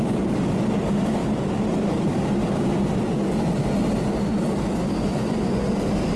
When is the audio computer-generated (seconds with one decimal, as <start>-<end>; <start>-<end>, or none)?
5.1-5.7